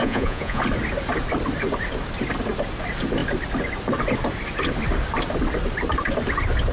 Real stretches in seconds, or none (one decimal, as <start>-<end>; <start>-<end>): 0.6-6.7